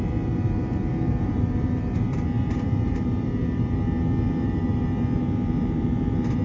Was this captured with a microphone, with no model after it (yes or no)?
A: no